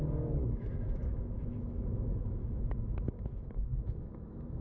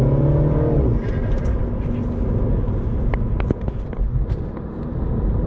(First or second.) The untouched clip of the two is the second